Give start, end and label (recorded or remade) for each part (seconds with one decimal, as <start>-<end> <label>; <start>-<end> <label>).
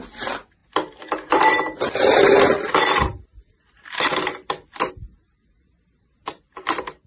0.0-7.1 recorded